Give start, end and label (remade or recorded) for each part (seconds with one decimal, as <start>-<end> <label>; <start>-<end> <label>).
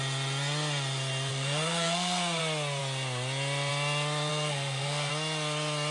0.0-1.3 recorded; 1.3-2.4 remade; 2.4-4.3 recorded; 4.3-5.1 remade; 5.1-5.9 recorded